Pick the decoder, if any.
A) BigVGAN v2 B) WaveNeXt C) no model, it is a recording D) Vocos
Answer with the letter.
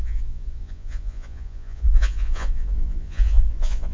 D